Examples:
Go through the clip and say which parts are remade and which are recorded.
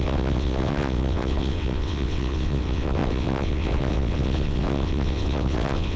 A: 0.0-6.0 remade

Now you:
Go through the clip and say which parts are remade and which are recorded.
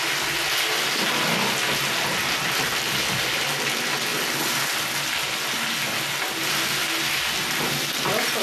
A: 0.0-8.4 recorded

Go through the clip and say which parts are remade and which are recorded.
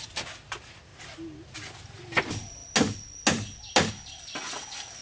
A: 0.0-5.0 recorded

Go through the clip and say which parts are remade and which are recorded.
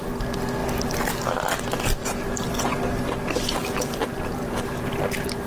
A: 0.0-5.5 recorded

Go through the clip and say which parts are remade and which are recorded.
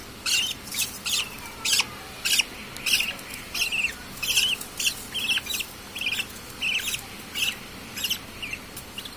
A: 0.0-9.2 recorded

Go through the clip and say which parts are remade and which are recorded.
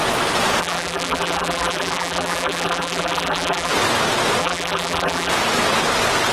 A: 0.0-0.6 recorded; 0.6-3.7 remade; 3.7-4.4 recorded; 4.4-5.3 remade; 5.3-6.3 recorded